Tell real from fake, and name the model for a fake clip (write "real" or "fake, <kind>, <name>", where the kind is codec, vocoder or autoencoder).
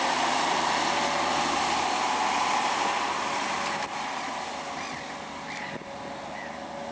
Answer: real